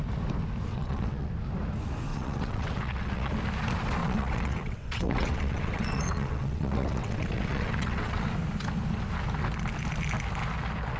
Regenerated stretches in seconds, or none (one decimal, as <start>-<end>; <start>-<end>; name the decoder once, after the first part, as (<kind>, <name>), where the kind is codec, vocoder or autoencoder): 0.7-1.3 (vocoder, WaveNeXt); 2.1-3.3; 4.0-8.3